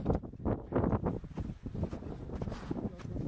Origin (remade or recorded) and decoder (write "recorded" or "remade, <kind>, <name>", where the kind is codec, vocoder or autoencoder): recorded